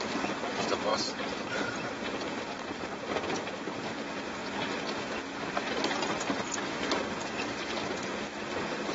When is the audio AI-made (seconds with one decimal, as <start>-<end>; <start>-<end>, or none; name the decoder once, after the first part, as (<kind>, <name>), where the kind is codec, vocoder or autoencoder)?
0.0-0.9 (vocoder, BigVGAN v2); 1.5-4.4; 6.7-8.9